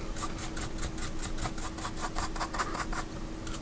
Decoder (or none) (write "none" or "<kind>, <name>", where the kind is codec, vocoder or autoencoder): none